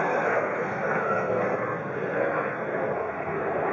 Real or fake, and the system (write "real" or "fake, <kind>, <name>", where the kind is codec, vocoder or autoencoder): fake, codec, SNAC